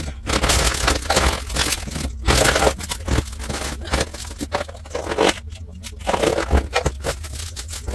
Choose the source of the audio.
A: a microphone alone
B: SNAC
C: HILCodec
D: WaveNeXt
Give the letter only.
A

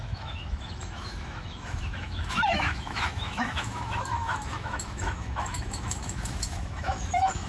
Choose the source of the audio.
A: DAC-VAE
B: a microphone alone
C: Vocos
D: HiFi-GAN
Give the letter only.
A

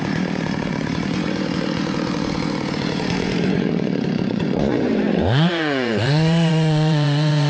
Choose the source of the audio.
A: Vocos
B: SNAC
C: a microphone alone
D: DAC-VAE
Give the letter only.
A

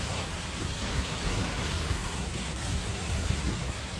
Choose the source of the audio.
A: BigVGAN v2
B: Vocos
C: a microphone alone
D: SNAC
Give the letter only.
D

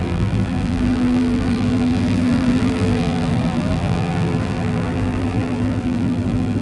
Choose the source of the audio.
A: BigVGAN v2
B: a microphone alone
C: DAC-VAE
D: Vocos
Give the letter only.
A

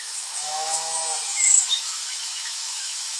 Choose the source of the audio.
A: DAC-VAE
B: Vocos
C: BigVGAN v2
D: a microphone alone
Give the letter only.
A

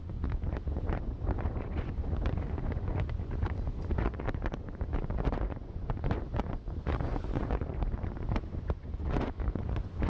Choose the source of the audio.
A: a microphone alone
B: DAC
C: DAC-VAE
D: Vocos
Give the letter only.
D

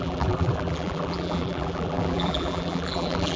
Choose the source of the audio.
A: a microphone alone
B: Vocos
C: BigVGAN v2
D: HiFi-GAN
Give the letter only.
C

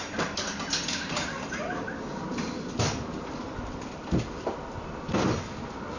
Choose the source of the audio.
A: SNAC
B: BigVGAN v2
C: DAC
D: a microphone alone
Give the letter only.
D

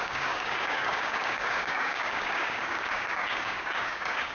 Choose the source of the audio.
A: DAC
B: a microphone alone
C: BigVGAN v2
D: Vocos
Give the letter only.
A